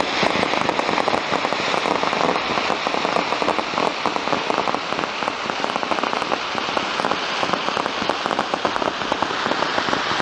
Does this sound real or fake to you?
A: real